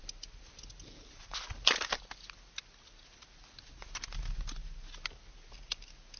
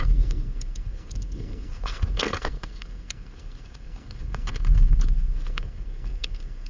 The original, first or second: first